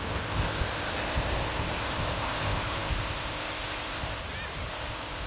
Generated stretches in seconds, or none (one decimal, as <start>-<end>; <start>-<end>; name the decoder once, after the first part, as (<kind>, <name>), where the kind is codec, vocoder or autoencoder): 0.0-4.2 (codec, ZipCodec); 4.7-5.3